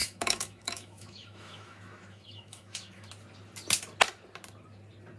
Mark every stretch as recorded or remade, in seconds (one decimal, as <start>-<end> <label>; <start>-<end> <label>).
0.0-3.1 remade; 3.1-5.2 recorded